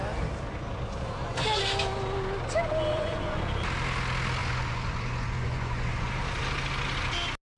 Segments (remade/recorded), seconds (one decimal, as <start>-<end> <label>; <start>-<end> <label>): 0.0-2.9 recorded; 2.9-3.4 remade; 3.4-4.4 recorded; 4.4-6.1 remade; 6.1-7.6 recorded